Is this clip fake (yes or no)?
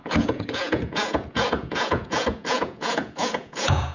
yes